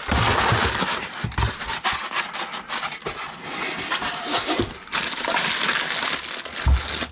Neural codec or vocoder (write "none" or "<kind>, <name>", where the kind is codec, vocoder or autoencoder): none